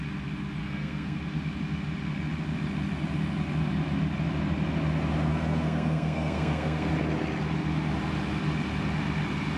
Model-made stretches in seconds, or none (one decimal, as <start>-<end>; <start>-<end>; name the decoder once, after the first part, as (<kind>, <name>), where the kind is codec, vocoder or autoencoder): 0.6-1.2 (codec, SNAC); 5.3-6.9